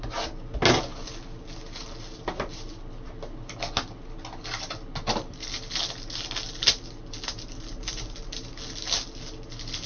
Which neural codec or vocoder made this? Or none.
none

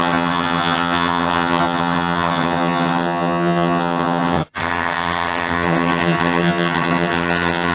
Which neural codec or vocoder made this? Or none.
vocoder, HiFi-GAN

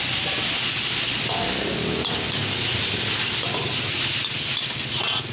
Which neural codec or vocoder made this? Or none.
none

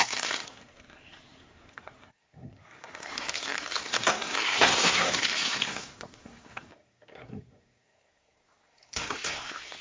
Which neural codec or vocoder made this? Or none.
codec, SNAC